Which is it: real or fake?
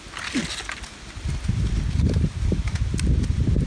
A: real